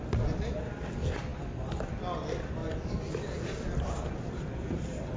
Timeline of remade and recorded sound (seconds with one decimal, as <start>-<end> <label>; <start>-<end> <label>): 0.0-5.2 recorded